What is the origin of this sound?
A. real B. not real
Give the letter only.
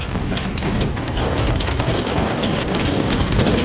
B